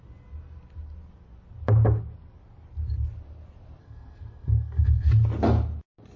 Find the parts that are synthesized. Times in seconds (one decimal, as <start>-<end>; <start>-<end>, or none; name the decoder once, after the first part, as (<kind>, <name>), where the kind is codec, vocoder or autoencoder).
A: 3.8-5.1 (codec, SNAC)